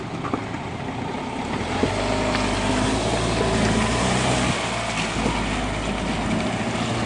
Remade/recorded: recorded